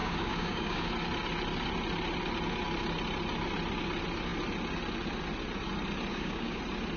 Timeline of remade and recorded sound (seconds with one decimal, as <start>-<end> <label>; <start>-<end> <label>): 0.0-0.9 remade; 0.9-6.1 recorded; 6.1-6.6 remade; 6.6-7.0 recorded